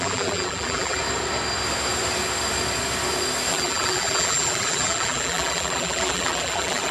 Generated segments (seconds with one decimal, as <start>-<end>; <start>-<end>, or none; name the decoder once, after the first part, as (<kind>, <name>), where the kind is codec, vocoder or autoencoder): 0.0-1.0 (vocoder, BigVGAN v2); 3.5-6.9